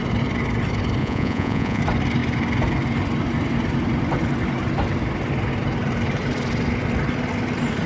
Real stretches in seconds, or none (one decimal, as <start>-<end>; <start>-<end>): 0.0-1.0; 1.8-7.9